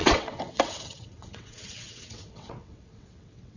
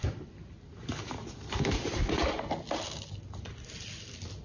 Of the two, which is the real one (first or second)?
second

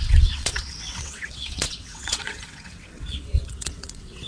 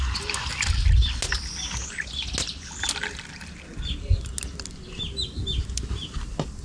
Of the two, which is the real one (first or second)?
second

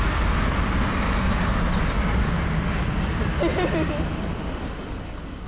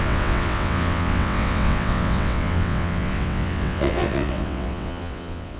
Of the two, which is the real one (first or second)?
first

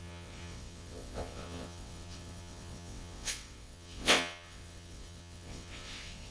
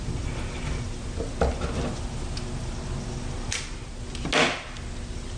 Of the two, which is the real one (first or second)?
second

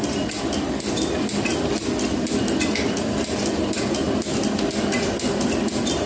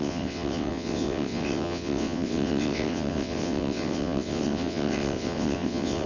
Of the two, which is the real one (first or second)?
first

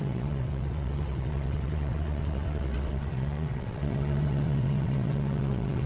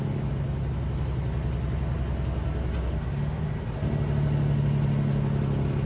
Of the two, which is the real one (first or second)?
second